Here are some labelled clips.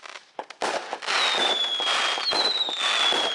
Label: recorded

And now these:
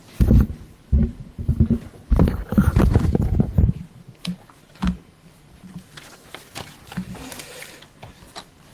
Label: recorded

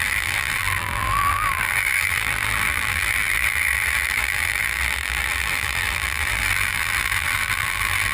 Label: remade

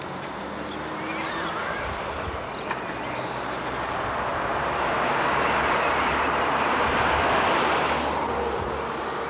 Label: recorded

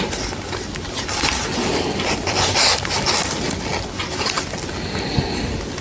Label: recorded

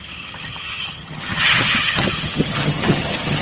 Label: remade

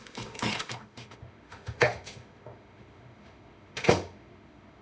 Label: remade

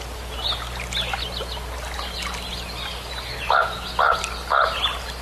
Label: recorded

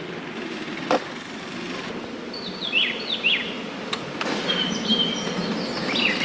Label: recorded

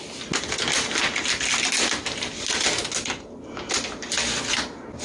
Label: recorded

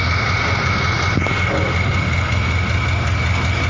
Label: recorded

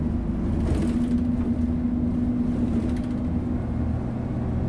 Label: recorded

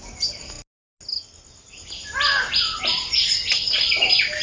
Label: recorded